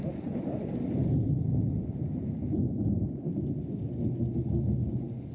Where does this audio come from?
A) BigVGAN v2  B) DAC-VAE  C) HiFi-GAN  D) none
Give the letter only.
D